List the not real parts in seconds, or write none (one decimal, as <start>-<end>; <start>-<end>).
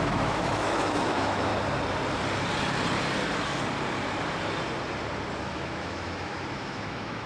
0.0-1.5; 5.4-7.3